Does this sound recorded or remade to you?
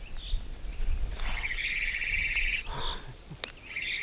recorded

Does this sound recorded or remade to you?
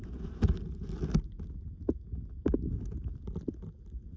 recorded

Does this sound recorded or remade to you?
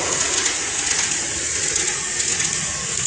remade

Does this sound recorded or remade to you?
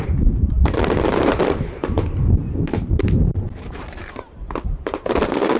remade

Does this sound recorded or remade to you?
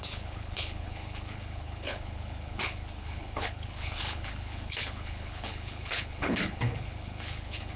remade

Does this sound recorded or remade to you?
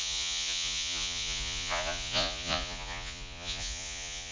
remade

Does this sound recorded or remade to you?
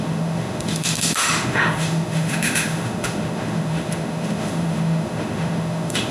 remade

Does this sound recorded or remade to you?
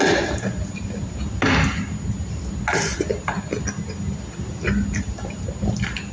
recorded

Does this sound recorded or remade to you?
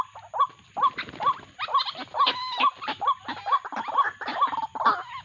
recorded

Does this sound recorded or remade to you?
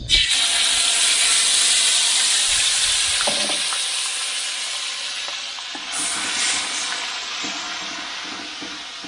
recorded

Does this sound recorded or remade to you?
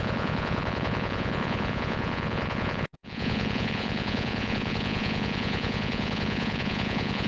remade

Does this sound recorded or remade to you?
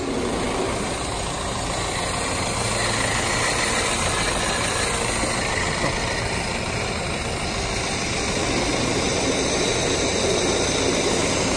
recorded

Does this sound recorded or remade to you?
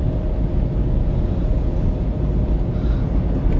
recorded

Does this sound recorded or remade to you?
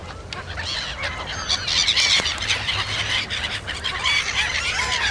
recorded